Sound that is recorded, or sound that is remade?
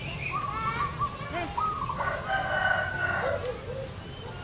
recorded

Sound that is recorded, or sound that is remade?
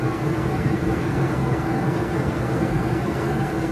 remade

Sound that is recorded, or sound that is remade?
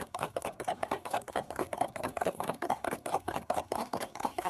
remade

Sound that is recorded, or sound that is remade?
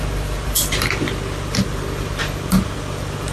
recorded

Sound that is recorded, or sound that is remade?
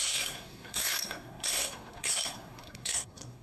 remade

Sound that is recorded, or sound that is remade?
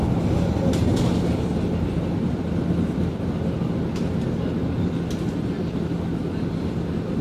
recorded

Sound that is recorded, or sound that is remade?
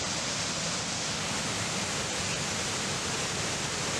recorded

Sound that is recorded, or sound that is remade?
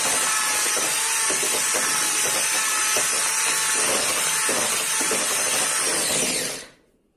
recorded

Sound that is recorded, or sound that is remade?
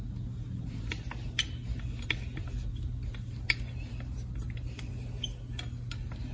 recorded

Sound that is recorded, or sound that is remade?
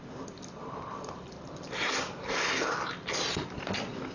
recorded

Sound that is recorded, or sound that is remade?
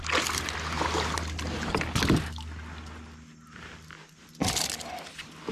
recorded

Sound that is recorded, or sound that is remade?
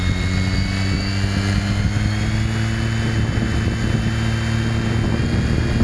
recorded